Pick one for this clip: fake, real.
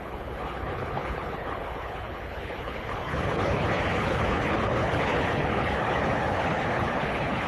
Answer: fake